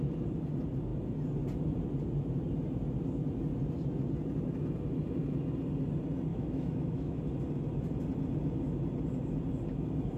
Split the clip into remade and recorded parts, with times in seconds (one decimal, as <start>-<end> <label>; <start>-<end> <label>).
0.0-6.3 recorded; 6.3-7.2 remade; 7.2-10.2 recorded